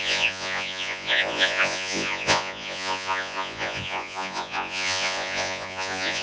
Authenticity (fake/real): fake